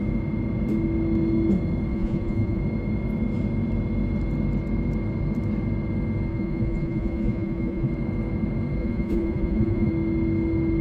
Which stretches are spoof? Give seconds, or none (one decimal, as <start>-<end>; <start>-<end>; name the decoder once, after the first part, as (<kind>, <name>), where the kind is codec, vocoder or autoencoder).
1.9-2.6 (vocoder, Vocos); 6.3-7.9; 8.8-9.9